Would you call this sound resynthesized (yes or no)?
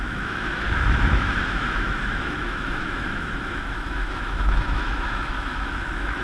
yes